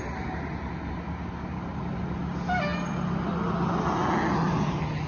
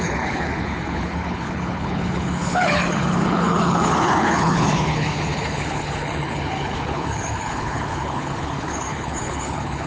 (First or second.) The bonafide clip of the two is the first